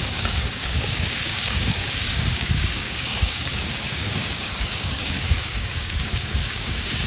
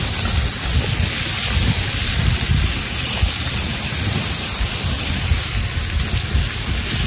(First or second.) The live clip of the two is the second